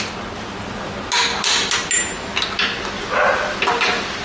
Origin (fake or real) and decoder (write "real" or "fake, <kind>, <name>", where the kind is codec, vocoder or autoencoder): real